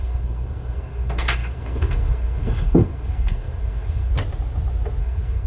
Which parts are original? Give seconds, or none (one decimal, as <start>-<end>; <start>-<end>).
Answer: 4.1-5.0